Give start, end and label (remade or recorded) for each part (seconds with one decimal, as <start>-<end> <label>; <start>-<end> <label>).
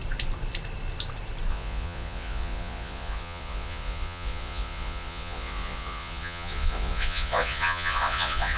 0.0-1.5 recorded; 1.5-8.6 remade